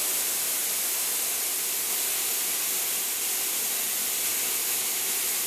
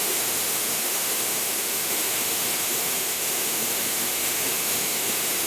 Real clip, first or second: first